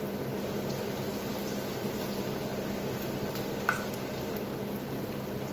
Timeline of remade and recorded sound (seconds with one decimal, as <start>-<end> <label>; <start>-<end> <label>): 0.0-5.5 recorded